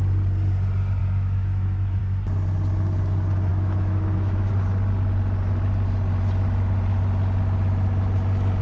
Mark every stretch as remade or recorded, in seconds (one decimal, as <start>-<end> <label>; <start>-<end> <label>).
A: 0.0-1.0 recorded; 1.0-2.0 remade; 2.0-3.5 recorded; 3.5-4.5 remade; 4.5-8.6 recorded